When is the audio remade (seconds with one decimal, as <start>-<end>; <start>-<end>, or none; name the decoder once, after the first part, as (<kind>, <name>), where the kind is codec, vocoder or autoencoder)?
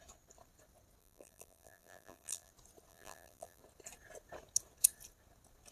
1.0-2.5 (vocoder, BigVGAN v2); 2.9-3.6